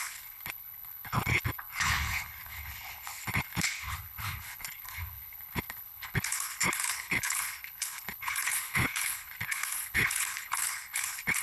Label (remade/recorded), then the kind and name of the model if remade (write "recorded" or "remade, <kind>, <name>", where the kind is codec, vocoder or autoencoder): remade, codec, HILCodec